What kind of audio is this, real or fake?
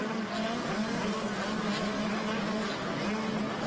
real